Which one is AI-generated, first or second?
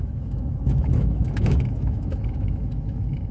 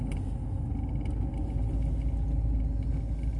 first